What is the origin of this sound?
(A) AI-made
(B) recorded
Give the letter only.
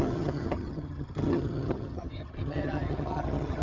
A